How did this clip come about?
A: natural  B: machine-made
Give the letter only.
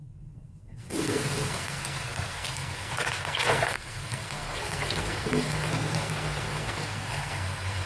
B